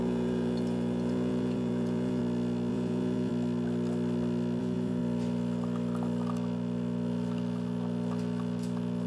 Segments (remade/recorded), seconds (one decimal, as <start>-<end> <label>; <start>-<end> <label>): 0.0-2.2 remade; 2.2-2.7 recorded; 2.7-3.3 remade; 3.3-4.6 recorded; 4.6-5.0 remade; 5.0-9.1 recorded